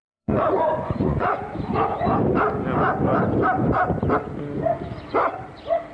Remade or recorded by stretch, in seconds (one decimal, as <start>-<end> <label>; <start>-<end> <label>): 0.0-1.4 remade; 1.4-5.9 recorded